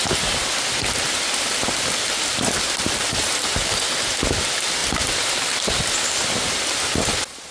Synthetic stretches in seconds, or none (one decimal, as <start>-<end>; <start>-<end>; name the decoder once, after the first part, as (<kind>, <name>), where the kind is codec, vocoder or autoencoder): none